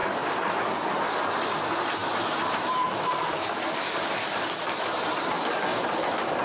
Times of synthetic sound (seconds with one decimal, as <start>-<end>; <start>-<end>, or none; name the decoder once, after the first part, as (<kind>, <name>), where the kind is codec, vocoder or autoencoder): none